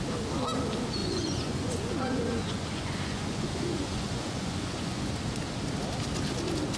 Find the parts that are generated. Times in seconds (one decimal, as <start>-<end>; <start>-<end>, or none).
1.0-5.1